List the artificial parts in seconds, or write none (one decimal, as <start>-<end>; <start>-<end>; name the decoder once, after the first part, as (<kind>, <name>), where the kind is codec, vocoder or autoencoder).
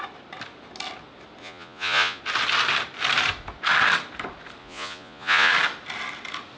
1.4-2.2 (vocoder, Vocos); 4.6-5.5